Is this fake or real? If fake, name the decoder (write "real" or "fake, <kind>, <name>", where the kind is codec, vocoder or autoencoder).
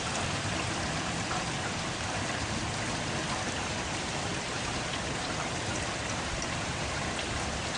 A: fake, vocoder, BigVGAN v2